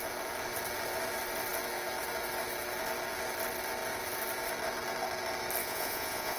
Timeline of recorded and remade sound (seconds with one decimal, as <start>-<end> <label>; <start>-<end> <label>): 0.0-5.6 recorded; 5.6-6.4 remade